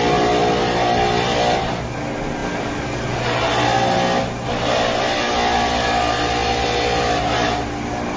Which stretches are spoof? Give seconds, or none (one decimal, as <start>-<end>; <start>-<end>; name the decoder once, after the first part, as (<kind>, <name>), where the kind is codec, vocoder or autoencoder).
none